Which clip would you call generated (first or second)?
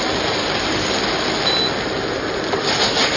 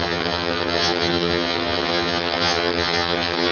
second